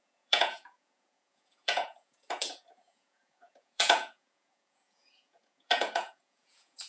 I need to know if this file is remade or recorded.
remade